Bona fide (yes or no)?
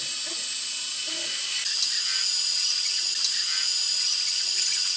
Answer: yes